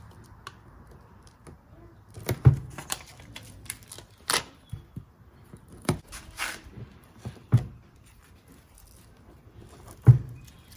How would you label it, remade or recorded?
recorded